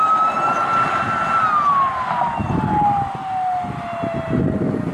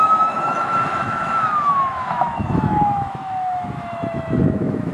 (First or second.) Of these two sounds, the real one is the first